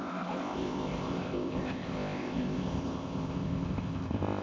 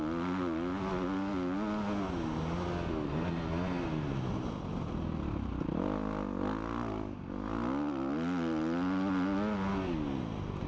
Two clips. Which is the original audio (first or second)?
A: second